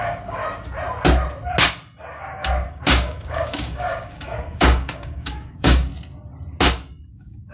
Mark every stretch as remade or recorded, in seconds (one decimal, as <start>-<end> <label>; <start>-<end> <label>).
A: 0.0-0.4 remade; 0.4-2.7 recorded; 2.7-5.9 remade; 5.9-7.1 recorded; 7.1-7.5 remade